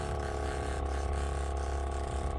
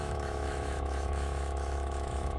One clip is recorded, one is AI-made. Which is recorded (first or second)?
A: first